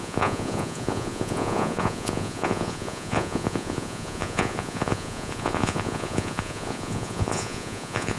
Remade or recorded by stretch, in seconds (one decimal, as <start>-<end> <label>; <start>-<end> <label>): 0.0-8.2 remade